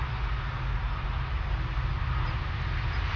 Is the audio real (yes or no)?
yes